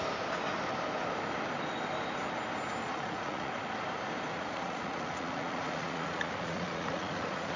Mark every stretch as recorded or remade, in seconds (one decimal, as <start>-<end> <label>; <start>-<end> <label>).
0.0-2.8 recorded; 2.8-3.5 remade; 3.5-4.3 recorded; 4.3-7.6 remade